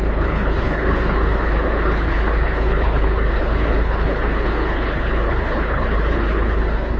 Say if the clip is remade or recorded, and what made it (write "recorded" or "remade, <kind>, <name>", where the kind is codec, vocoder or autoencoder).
remade, codec, HILCodec